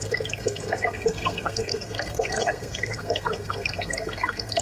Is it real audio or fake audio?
fake